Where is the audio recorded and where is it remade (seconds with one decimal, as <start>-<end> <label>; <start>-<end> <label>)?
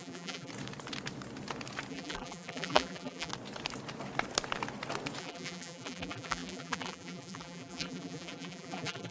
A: 0.0-0.5 remade; 0.5-1.9 recorded; 1.9-3.3 remade; 3.3-5.2 recorded; 5.2-9.1 remade